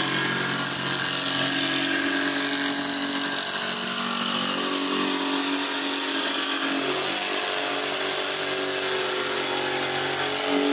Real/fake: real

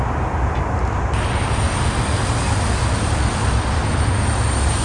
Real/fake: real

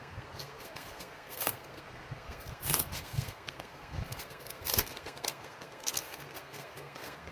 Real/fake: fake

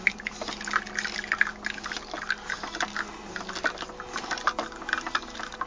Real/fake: real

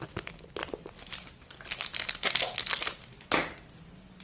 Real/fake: real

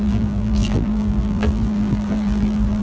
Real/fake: fake